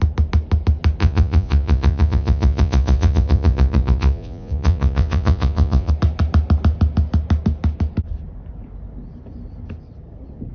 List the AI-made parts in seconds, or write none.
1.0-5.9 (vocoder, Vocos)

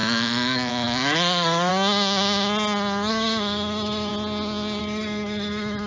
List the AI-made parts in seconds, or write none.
0.0-1.7 (autoencoder, DAC-VAE); 3.1-4.1; 4.8-5.9

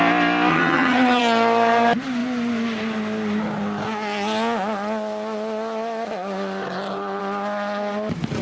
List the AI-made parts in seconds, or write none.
0.5-1.2 (vocoder, HiFi-GAN)

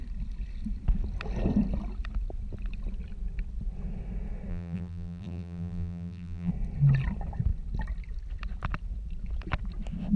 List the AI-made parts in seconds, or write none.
4.5-6.5 (vocoder, BigVGAN v2)

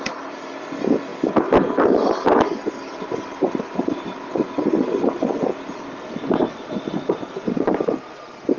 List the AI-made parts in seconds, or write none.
0.0-1.1 (vocoder, BigVGAN v2); 2.9-8.6

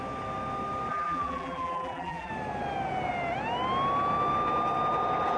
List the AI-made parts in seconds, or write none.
0.9-2.3 (vocoder, BigVGAN v2)

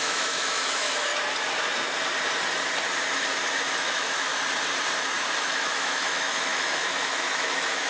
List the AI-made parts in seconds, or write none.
0.0-1.1 (autoencoder, DAC-VAE); 3.6-4.3; 5.4-7.9